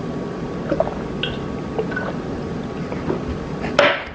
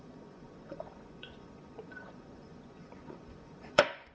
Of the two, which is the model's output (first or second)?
second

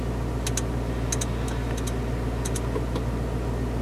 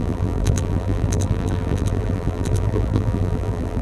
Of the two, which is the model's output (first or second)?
second